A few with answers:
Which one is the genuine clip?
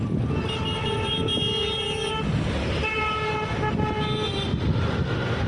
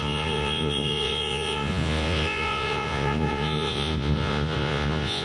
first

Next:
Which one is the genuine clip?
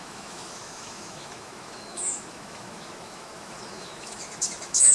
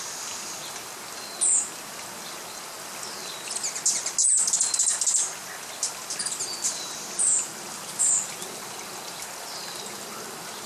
second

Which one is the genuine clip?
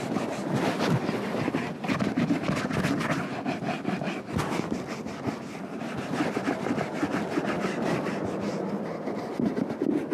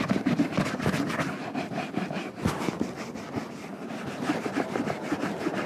first